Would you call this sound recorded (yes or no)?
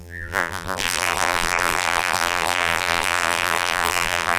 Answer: no